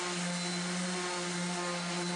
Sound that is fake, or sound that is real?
real